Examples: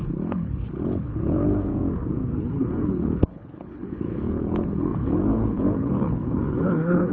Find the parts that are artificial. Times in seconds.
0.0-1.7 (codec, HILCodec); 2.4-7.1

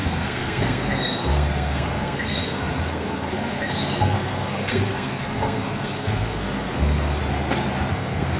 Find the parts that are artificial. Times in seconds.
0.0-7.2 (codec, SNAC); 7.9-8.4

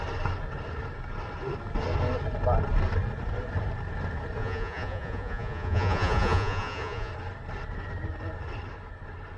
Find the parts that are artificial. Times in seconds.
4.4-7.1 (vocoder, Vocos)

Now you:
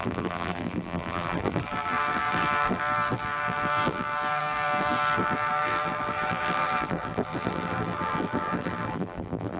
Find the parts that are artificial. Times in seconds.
0.0-9.6 (vocoder, BigVGAN v2)

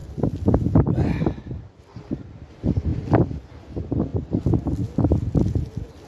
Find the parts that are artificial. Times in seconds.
4.1-6.1 (vocoder, BigVGAN v2)